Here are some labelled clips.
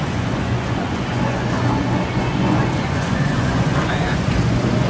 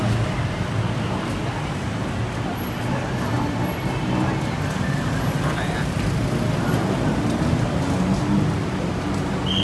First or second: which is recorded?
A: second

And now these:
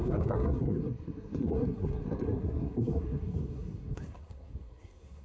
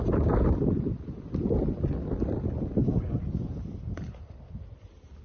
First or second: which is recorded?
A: second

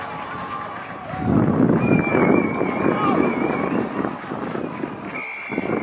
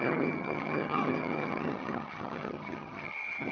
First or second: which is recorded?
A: first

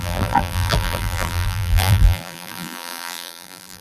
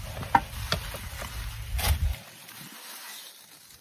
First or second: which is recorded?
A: second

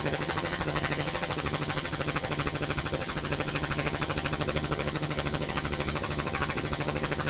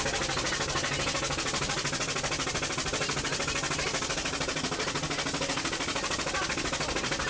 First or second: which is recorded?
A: second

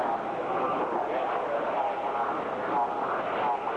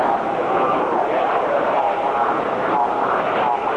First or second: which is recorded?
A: first